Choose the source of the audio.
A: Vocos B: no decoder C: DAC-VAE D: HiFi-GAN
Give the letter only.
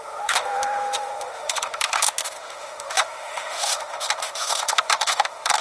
C